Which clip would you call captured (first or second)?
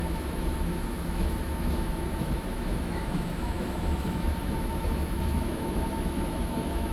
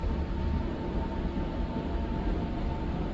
second